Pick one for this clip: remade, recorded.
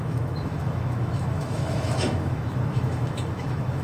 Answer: remade